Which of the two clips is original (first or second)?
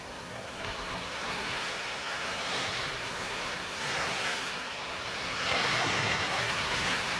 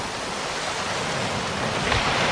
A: second